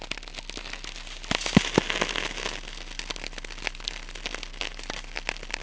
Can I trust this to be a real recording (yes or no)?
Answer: yes